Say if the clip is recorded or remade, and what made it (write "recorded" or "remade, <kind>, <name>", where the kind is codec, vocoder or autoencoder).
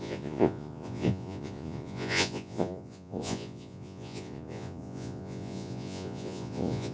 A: remade, vocoder, Vocos